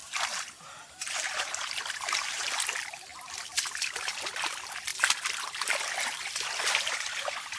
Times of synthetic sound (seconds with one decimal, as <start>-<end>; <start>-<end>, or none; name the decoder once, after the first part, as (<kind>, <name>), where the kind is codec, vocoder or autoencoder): 0.0-2.4 (vocoder, BigVGAN v2)